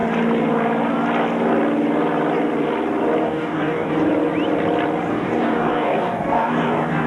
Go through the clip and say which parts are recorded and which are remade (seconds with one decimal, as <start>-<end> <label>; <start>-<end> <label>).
0.0-3.2 recorded; 3.2-3.9 remade; 3.9-5.1 recorded; 5.1-7.1 remade